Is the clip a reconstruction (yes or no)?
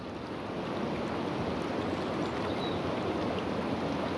no